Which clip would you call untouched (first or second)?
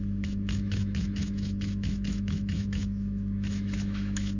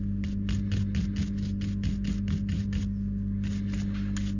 second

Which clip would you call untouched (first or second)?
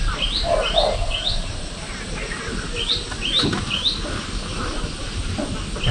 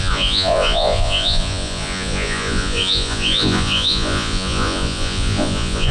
first